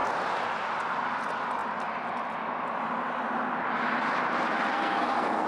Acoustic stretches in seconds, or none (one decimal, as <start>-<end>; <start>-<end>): 0.0-4.7